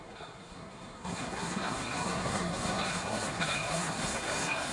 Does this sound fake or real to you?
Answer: fake